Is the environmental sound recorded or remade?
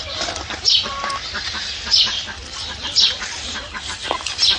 remade